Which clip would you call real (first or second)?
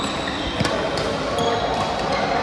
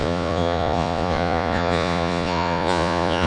first